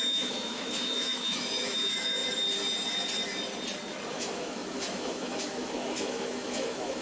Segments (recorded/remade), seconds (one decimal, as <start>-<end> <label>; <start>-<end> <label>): 0.0-2.2 remade; 2.2-4.1 recorded; 4.1-7.0 remade